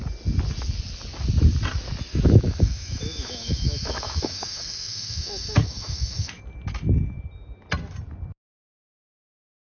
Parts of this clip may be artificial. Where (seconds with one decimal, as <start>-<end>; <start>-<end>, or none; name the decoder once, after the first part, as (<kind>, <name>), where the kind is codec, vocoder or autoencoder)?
2.1-6.4 (autoencoder, DAC-VAE)